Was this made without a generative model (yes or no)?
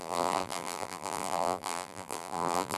no